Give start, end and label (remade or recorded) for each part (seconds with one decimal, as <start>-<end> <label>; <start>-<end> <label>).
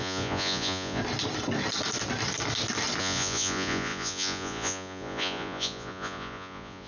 0.0-1.0 remade; 1.0-3.0 recorded; 3.0-6.9 remade